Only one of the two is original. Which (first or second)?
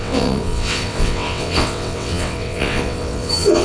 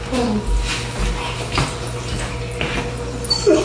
second